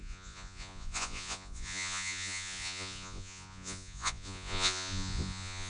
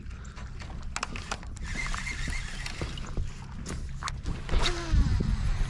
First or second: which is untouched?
second